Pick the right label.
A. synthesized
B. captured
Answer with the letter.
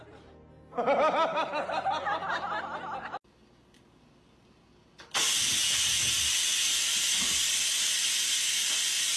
B